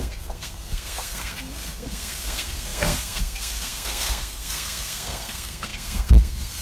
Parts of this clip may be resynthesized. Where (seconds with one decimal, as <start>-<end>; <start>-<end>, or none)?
0.0-6.6